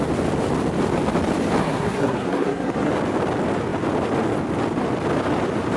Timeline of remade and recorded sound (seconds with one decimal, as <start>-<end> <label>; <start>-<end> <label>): 0.0-1.6 recorded; 1.6-2.9 remade; 2.9-5.8 recorded